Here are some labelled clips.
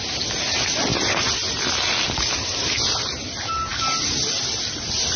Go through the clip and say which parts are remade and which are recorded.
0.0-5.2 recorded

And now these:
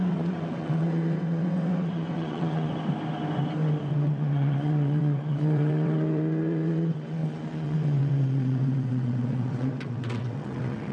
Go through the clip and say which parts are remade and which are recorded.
0.0-2.7 remade; 2.7-3.9 recorded; 3.9-10.9 remade

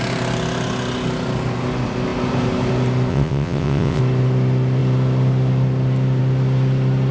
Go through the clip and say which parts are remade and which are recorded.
0.0-3.1 recorded; 3.1-4.0 remade; 4.0-7.1 recorded

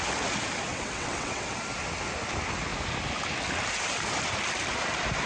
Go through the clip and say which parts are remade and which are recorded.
0.0-0.7 recorded; 0.7-1.5 remade; 1.5-5.3 recorded

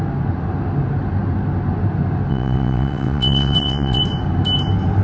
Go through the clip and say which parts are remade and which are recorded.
0.0-2.3 recorded; 2.3-4.0 remade; 4.0-5.0 recorded

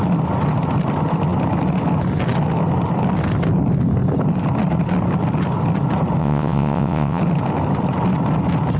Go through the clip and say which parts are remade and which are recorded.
0.0-6.2 recorded; 6.2-7.2 remade; 7.2-8.8 recorded